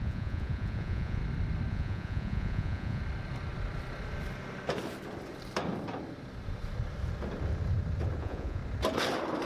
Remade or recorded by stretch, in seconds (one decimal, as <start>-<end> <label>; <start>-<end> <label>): 0.0-1.2 remade; 1.2-1.7 recorded; 1.7-3.0 remade; 3.0-8.2 recorded; 8.2-8.6 remade; 8.6-9.5 recorded